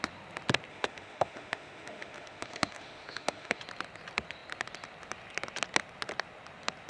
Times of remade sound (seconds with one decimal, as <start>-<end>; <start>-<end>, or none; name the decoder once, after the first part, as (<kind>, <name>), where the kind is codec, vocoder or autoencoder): 0.7-3.6 (autoencoder, DAC-VAE)